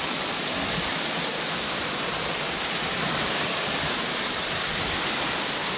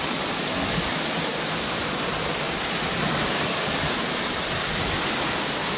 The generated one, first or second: first